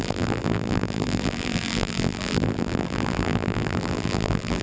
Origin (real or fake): fake